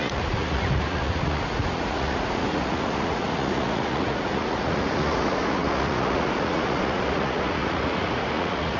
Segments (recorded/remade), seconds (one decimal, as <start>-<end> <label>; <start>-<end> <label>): 0.0-8.8 remade